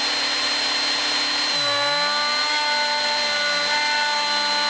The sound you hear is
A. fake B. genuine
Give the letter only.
B